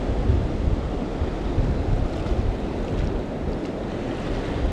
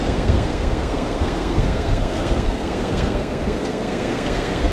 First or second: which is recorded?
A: first